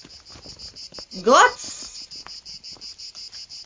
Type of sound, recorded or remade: recorded